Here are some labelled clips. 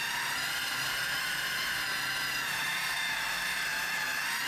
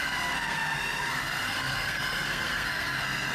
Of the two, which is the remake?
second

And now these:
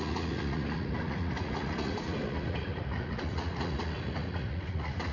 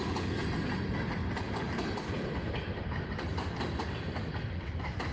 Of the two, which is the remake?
first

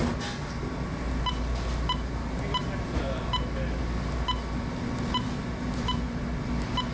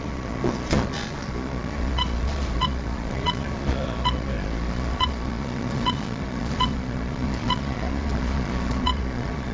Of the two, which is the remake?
second